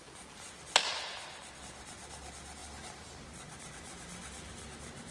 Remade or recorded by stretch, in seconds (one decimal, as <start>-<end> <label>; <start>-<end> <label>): 0.0-5.1 recorded